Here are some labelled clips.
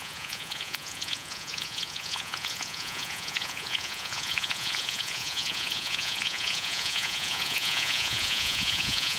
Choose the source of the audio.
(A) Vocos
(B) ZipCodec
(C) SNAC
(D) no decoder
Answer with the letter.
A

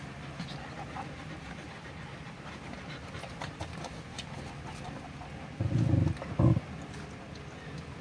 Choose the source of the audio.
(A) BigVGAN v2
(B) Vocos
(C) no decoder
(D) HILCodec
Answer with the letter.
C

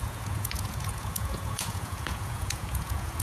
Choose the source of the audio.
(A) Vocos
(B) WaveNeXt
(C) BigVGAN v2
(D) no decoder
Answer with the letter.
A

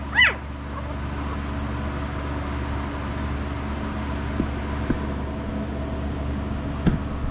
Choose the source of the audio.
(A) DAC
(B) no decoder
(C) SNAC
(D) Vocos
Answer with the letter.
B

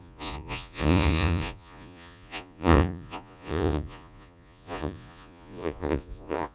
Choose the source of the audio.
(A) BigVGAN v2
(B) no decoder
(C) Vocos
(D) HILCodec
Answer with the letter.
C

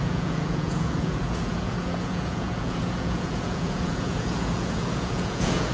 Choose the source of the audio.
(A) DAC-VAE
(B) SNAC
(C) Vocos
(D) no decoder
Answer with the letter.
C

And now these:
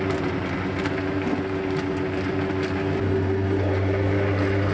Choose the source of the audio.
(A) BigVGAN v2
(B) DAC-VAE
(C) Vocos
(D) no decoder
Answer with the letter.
D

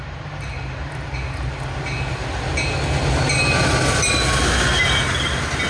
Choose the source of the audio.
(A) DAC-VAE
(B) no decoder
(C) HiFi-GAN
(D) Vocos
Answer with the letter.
B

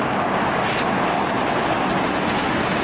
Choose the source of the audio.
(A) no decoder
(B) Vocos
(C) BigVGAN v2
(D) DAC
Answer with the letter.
A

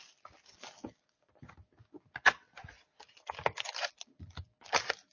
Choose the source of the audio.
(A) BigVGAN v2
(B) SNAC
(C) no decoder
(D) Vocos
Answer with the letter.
C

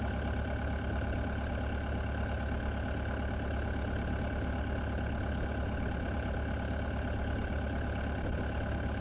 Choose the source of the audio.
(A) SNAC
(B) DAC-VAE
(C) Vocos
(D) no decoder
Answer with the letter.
D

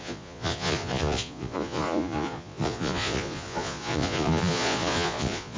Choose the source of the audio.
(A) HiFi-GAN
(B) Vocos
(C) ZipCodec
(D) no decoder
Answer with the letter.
B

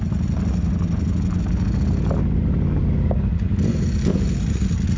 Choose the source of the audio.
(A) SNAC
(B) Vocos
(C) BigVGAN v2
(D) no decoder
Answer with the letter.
D